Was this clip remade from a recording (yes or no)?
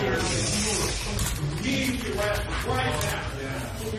no